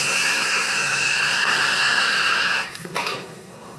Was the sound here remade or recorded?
remade